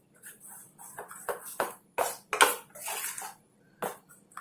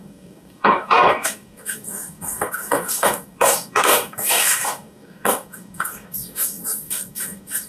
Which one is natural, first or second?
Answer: first